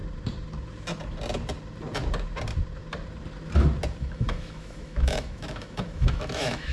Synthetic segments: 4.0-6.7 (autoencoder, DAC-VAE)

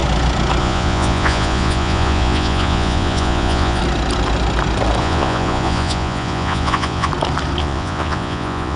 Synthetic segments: 0.6-3.8 (vocoder, Vocos); 5.0-7.1; 7.6-8.8

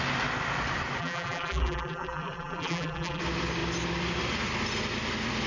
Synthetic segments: 1.0-3.2 (vocoder, BigVGAN v2)

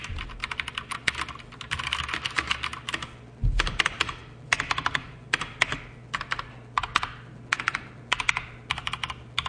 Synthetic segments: none